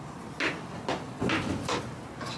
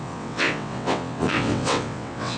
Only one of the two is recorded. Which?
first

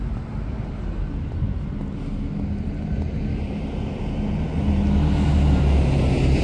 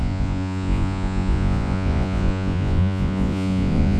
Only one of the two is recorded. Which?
first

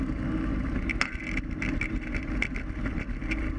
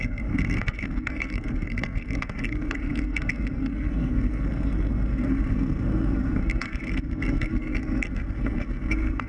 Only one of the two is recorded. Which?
first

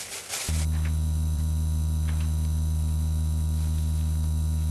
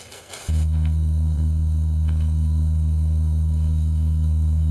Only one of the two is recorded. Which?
first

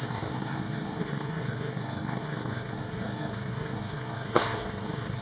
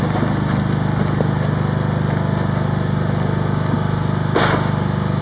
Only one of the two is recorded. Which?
second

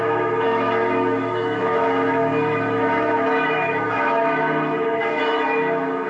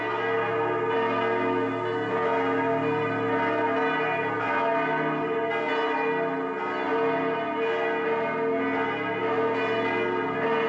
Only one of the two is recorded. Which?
second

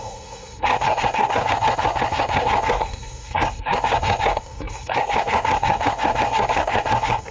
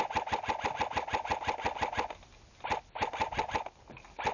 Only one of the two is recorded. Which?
second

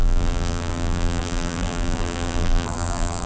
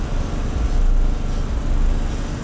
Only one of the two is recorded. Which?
second